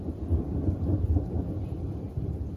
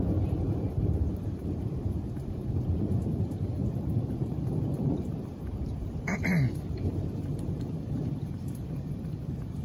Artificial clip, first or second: second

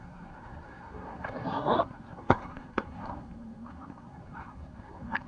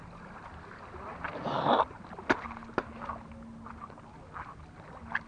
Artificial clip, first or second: first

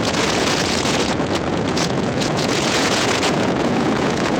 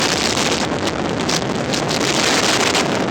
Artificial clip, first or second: first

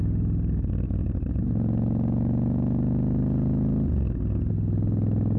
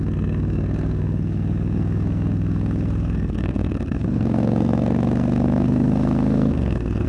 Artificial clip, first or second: second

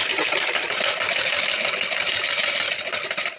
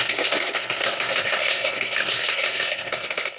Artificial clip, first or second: second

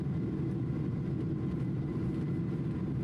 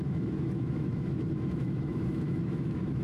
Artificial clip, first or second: second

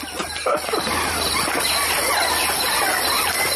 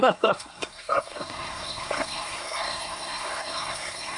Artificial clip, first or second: second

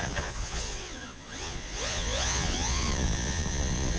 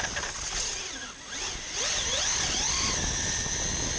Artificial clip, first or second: first